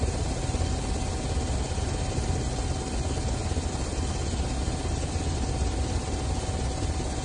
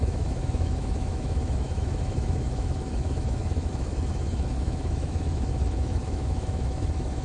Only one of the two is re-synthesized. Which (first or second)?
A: second